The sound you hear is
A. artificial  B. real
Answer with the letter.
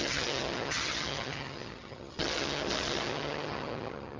A